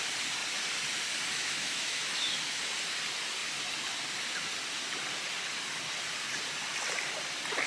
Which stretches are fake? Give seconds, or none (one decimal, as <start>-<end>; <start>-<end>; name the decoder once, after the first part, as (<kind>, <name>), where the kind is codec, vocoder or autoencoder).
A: 1.3-2.6 (autoencoder, DAC-VAE)